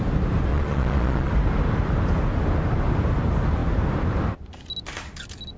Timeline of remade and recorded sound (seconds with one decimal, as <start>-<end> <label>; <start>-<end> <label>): 0.0-0.5 recorded; 0.5-1.3 remade; 1.3-5.6 recorded